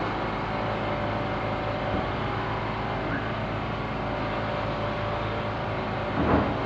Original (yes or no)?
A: yes